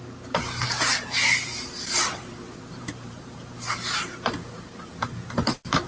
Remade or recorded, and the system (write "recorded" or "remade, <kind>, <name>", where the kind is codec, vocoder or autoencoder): remade, vocoder, BigVGAN v2